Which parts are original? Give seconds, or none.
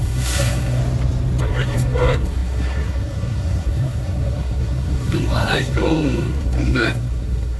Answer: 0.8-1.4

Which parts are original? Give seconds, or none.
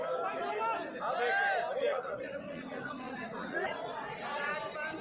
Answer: 0.0-1.9; 4.5-5.0